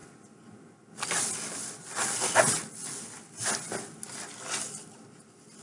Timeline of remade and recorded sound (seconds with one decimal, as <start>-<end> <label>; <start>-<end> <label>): 0.0-5.6 recorded